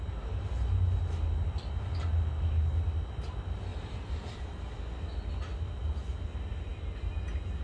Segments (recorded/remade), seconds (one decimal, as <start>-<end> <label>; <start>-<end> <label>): 0.0-7.6 recorded